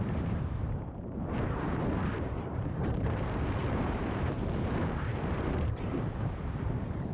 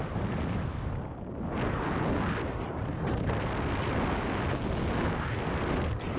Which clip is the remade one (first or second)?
first